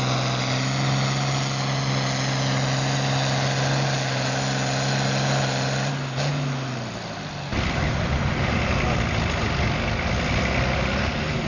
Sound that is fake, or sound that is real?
real